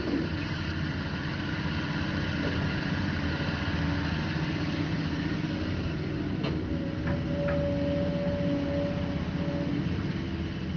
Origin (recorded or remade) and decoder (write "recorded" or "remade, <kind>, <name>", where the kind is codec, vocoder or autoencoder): recorded